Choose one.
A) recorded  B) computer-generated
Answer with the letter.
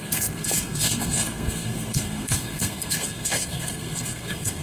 B